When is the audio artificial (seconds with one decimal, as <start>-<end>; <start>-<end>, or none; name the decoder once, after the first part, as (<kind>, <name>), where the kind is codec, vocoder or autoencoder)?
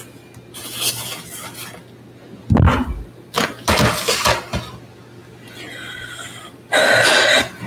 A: none